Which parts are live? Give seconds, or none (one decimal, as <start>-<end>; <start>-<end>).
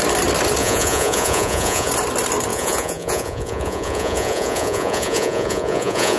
0.0-0.6; 1.9-2.5